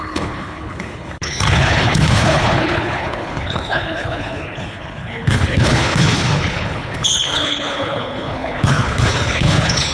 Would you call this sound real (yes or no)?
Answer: no